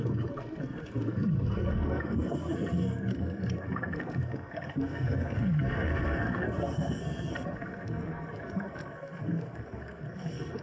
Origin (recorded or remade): remade